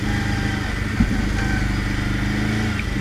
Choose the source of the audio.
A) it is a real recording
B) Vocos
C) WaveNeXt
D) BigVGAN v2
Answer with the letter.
A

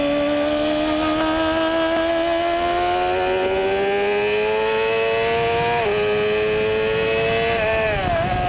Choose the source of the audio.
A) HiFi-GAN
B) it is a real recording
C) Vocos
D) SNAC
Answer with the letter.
B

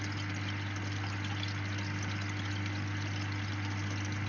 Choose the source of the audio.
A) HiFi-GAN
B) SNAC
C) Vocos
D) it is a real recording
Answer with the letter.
D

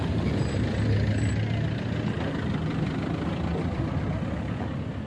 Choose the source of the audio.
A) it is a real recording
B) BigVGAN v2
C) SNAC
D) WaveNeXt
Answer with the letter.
A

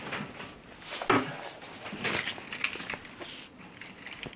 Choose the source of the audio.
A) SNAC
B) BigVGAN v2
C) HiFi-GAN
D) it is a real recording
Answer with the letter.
D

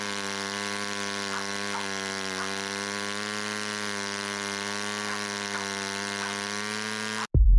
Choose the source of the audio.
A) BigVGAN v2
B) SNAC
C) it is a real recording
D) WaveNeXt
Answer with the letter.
C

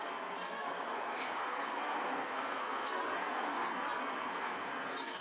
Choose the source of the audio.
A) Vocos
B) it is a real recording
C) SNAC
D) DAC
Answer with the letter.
C